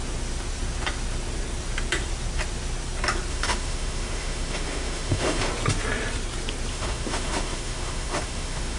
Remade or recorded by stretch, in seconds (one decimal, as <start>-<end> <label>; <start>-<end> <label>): 0.0-3.3 recorded; 3.3-5.5 remade; 5.5-6.7 recorded; 6.7-8.8 remade